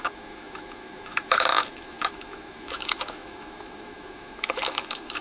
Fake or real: fake